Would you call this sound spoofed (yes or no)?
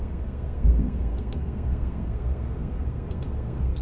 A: yes